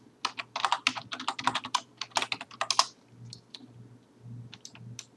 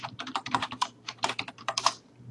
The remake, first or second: second